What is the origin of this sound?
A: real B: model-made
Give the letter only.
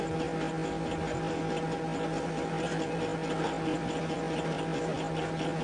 B